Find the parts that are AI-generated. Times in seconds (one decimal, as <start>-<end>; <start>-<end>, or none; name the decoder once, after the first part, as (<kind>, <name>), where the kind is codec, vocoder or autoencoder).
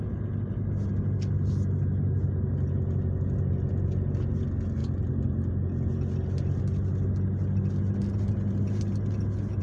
none